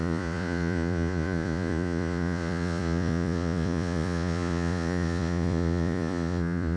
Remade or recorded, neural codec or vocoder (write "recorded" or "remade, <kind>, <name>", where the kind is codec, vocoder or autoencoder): remade, vocoder, Vocos